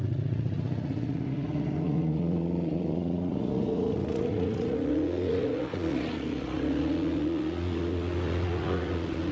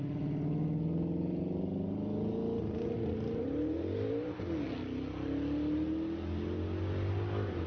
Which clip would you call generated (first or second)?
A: first